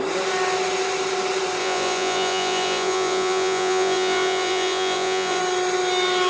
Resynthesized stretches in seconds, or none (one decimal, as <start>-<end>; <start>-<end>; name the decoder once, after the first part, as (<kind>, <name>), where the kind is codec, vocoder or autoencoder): 1.6-5.4 (vocoder, Vocos)